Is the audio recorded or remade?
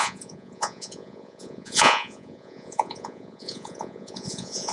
remade